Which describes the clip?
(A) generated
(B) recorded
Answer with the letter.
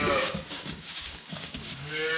A